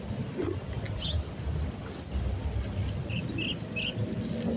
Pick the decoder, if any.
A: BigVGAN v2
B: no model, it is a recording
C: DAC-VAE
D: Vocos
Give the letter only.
B